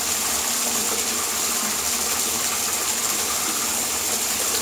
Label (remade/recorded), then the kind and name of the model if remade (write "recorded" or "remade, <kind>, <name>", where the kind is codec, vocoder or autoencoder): recorded